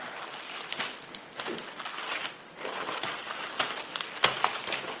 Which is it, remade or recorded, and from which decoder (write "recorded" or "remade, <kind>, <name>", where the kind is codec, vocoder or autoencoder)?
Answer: recorded